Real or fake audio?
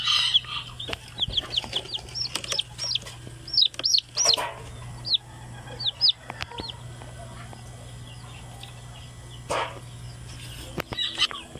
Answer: real